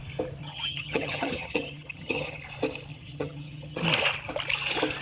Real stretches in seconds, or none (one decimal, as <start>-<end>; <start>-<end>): 0.0-0.4; 2.4-2.9; 3.8-5.0